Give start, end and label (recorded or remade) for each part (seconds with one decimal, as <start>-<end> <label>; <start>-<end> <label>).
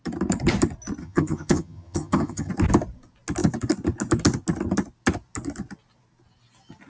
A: 0.0-1.0 recorded; 1.0-2.5 remade; 2.5-6.9 recorded